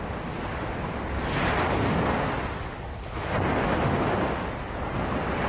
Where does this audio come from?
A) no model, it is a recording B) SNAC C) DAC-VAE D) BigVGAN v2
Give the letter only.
A